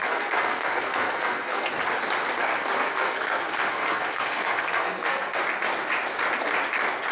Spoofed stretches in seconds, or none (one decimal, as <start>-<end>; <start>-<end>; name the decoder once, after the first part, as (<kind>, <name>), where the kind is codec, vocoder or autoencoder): 0.0-1.7 (codec, SNAC); 2.4-5.4